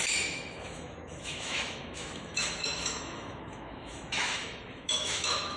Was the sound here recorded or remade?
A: remade